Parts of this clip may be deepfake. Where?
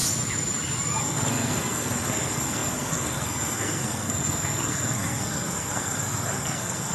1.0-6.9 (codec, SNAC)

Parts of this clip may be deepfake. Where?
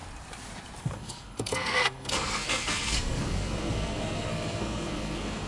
0.8-5.5 (codec, SNAC)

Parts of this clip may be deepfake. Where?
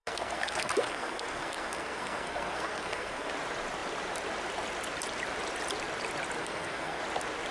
0.0-3.3 (codec, SNAC); 6.4-7.0